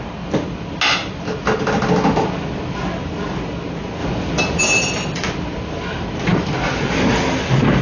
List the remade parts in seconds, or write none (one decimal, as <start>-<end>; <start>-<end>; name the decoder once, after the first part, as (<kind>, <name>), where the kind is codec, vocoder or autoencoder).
none